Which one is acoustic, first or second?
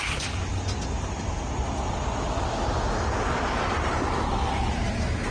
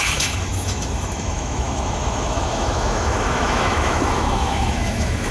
first